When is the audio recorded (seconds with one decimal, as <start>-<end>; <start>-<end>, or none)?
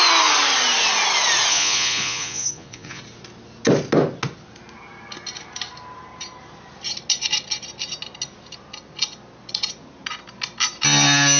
0.0-1.5; 3.0-11.4